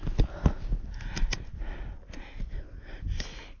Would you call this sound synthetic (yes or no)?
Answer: no